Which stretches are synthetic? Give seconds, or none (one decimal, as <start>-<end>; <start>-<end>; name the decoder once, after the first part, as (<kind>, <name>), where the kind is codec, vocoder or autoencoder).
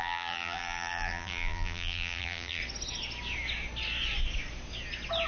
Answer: 0.0-2.6 (vocoder, BigVGAN v2)